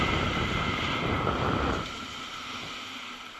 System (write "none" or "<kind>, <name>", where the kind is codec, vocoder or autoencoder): none